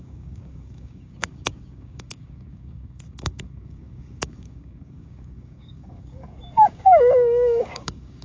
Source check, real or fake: fake